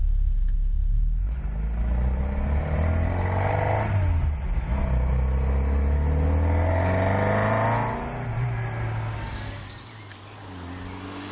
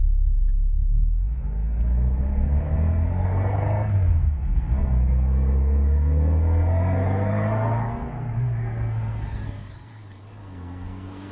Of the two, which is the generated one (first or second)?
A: second